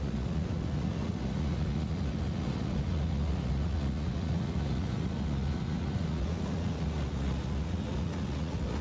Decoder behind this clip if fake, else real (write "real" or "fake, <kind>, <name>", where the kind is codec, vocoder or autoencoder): fake, vocoder, Vocos